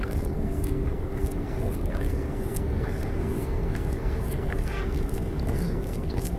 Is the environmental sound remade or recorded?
remade